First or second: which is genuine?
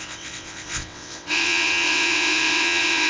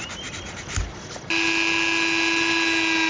second